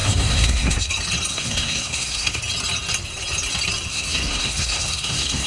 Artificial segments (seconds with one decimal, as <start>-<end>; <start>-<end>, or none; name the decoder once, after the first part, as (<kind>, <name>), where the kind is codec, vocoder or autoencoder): 0.0-0.9 (codec, SNAC); 1.3-2.4; 3.9-5.5